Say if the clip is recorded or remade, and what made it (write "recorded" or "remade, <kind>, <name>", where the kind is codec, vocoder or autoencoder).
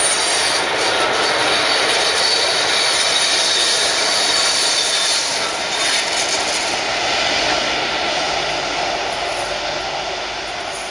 recorded